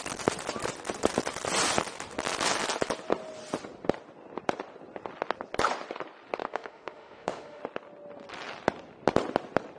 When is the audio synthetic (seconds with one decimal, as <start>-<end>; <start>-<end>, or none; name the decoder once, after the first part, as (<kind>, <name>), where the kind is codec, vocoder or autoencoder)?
6.4-7.6 (autoencoder, DAC-VAE)